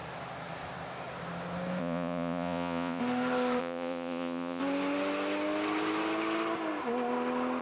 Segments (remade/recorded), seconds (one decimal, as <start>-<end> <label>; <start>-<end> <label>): 0.0-1.8 recorded; 1.8-3.0 remade; 3.0-3.6 recorded; 3.6-4.6 remade; 4.6-7.6 recorded